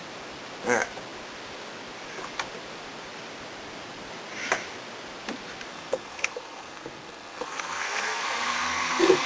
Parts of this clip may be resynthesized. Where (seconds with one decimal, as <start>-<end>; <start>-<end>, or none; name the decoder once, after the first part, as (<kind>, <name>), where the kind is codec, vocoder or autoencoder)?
5.7-9.3 (codec, SNAC)